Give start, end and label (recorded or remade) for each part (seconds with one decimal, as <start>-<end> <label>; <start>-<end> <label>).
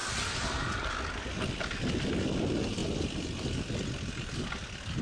0.0-5.0 recorded